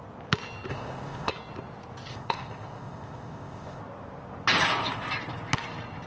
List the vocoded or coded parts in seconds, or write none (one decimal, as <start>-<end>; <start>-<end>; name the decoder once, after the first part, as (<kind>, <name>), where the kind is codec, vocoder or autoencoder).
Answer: 0.7-1.3 (codec, ZipCodec); 2.1-3.8